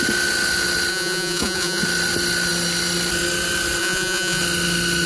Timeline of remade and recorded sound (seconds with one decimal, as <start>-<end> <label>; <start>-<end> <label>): 0.0-0.9 recorded; 0.9-1.8 remade; 1.8-3.8 recorded; 3.8-4.4 remade; 4.4-5.1 recorded